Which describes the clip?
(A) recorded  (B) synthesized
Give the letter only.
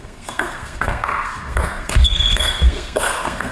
B